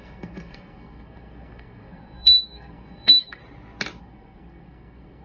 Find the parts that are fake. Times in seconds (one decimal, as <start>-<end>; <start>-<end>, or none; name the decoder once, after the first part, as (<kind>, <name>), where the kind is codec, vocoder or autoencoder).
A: 0.0-3.4 (codec, SNAC); 4.0-5.2